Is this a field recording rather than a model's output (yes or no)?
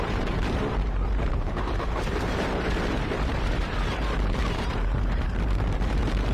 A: no